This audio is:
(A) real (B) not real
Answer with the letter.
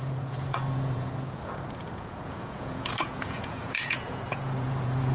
B